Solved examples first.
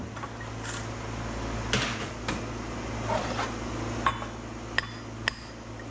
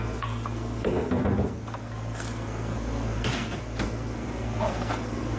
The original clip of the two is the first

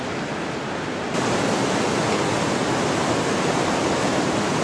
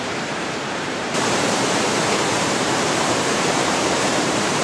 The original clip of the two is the first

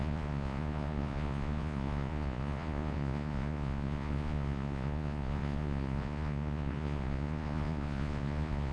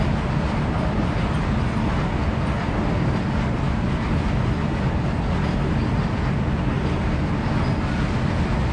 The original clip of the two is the second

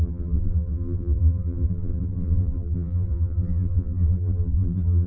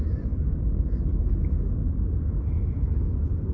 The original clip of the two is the second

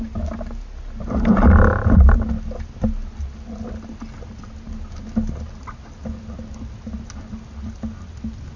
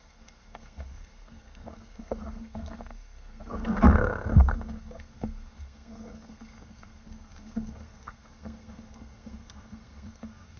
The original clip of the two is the first